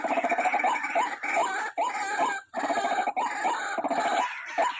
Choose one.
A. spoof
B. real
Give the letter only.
A